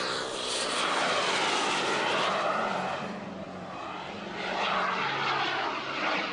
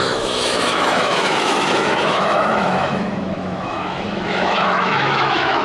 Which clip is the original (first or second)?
first